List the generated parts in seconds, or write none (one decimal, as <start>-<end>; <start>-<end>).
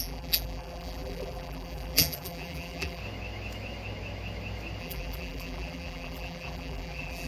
0.0-3.0; 4.8-7.3